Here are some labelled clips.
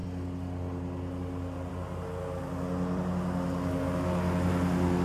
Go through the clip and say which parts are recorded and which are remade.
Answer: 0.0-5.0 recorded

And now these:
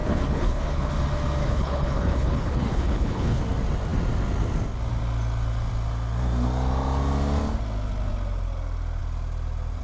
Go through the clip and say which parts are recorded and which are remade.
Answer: 0.0-0.9 remade; 0.9-1.4 recorded; 1.4-3.4 remade; 3.4-9.8 recorded